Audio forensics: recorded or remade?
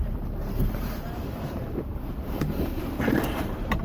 remade